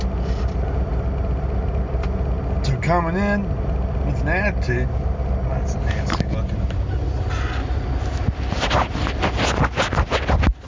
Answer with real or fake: real